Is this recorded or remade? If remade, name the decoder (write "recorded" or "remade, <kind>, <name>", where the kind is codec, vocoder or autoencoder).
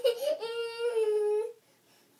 recorded